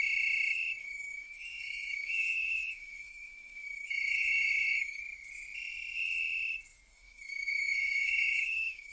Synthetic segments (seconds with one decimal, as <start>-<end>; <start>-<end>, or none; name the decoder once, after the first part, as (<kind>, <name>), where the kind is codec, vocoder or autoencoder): 0.8-5.0 (autoencoder, DAC-VAE); 6.9-8.9